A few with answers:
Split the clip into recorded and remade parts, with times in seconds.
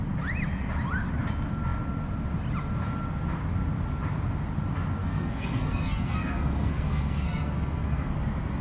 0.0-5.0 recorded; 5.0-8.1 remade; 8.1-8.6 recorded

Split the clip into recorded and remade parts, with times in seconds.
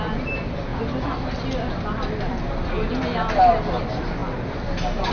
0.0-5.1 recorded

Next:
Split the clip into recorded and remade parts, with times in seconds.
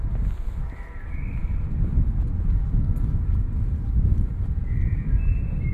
0.0-5.7 recorded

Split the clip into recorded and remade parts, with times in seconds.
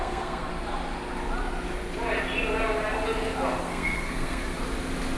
0.0-0.5 remade; 0.5-3.6 recorded; 3.6-4.4 remade; 4.4-5.2 recorded